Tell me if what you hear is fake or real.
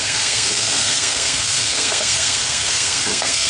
fake